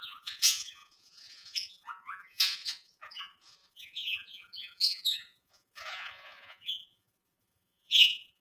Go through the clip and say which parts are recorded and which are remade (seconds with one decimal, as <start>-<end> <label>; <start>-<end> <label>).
0.0-8.4 remade